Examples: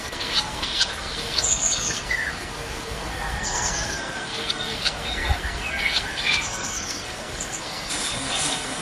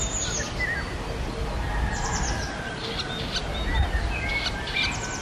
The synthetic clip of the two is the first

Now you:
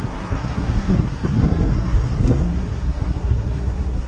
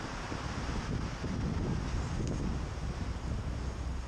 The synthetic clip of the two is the first